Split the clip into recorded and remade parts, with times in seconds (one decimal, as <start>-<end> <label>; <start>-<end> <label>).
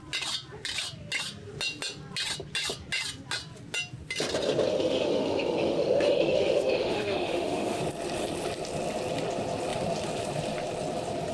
0.0-4.7 recorded; 4.7-7.8 remade; 7.8-11.3 recorded